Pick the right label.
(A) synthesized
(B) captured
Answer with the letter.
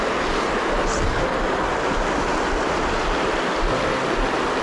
B